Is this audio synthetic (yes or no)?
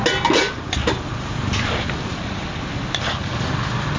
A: no